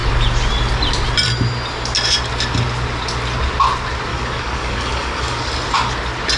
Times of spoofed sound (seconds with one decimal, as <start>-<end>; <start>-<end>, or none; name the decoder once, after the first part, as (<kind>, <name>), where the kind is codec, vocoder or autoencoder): 4.1-5.5 (codec, DAC)